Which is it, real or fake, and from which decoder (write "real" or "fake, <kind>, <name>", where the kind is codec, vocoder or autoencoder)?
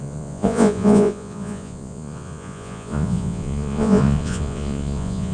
fake, vocoder, Vocos